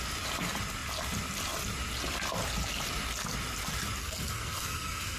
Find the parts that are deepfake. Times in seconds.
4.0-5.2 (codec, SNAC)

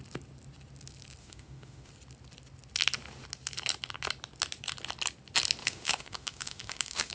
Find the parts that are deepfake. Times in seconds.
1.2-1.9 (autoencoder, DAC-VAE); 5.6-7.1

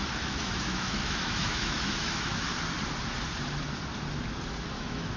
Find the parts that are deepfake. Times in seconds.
0.0-2.5 (autoencoder, DAC-VAE); 4.7-5.2

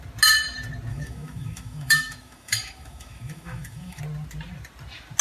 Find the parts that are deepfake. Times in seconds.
0.9-4.0 (autoencoder, DAC-VAE)